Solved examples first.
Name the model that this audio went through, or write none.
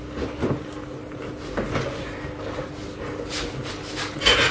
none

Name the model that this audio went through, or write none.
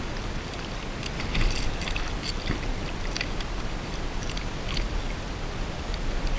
none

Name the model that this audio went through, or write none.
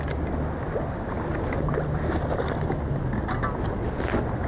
none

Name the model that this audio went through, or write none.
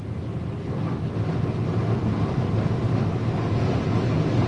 none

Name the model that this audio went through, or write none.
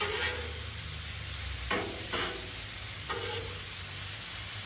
none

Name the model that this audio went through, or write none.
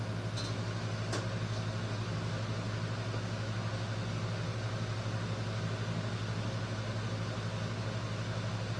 none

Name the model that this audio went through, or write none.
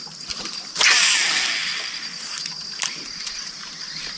none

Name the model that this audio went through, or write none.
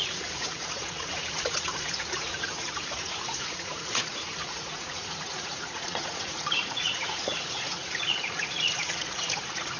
vocoder, Vocos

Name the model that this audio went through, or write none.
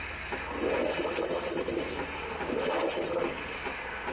none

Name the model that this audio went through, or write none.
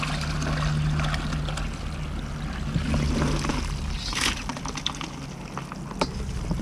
none